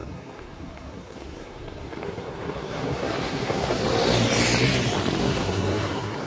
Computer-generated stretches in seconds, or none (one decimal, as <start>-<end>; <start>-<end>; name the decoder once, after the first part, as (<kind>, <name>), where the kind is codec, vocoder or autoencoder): 0.0-3.8 (codec, SNAC); 5.2-6.3